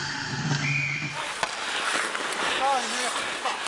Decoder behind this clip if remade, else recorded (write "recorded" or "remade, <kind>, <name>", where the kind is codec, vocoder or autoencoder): recorded